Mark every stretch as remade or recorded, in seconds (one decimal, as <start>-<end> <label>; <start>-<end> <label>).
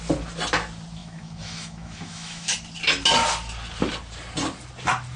0.0-1.0 recorded; 1.0-2.5 remade; 2.5-5.2 recorded